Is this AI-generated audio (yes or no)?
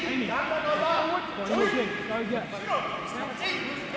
no